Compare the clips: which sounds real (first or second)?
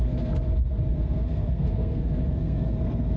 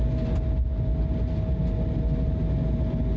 second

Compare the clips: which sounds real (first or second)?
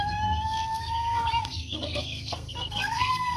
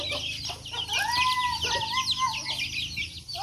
second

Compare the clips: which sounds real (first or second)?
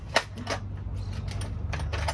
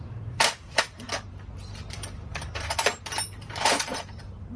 first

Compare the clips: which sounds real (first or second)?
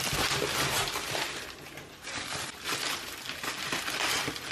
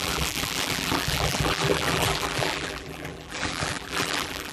first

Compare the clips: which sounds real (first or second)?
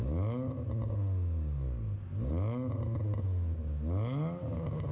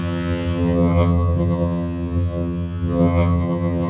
first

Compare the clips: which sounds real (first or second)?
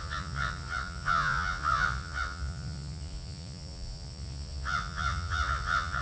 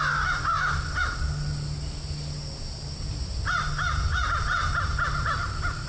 second